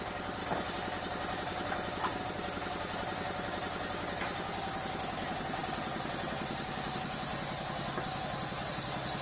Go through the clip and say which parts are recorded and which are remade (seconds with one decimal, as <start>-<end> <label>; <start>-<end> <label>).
0.0-9.2 recorded